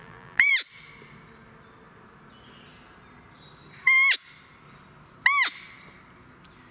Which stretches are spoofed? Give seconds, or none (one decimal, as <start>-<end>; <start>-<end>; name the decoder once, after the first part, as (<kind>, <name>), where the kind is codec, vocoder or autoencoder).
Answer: 0.0-0.5 (vocoder, BigVGAN v2)